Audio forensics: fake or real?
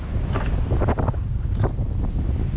real